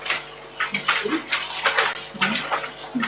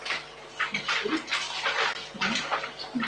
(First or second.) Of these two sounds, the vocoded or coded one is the second